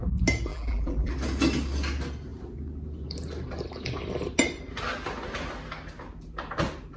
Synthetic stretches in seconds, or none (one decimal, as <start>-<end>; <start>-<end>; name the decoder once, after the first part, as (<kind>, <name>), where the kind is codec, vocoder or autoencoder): 0.5-1.1 (vocoder, BigVGAN v2)